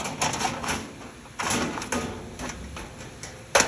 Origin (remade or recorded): recorded